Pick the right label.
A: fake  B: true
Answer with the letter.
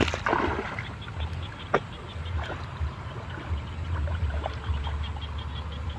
B